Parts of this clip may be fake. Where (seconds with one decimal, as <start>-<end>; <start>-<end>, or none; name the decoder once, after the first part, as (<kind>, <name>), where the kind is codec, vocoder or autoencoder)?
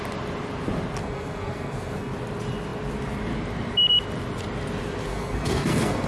1.0-2.1 (codec, SNAC); 5.1-6.1